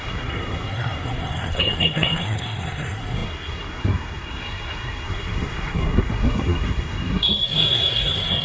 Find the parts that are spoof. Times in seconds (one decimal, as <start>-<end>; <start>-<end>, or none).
0.0-8.4